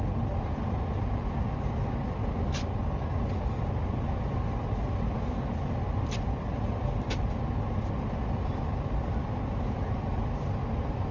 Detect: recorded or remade recorded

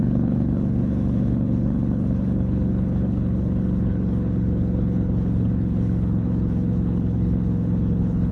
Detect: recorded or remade remade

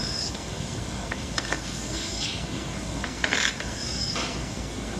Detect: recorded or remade remade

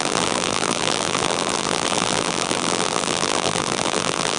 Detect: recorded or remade remade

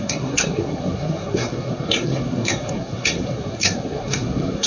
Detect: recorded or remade remade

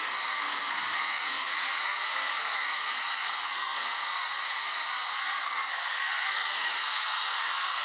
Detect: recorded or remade remade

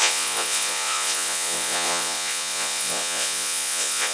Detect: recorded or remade remade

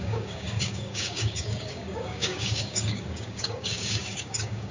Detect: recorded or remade remade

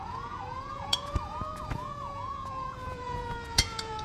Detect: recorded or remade remade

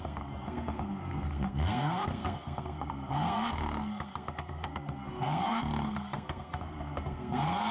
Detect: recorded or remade remade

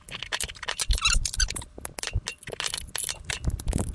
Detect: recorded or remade recorded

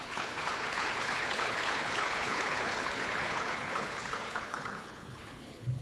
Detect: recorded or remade remade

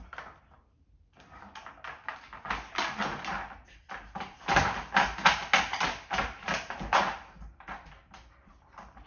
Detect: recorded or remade recorded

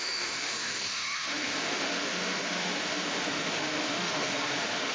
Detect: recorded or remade remade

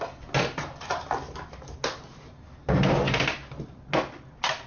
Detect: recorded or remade recorded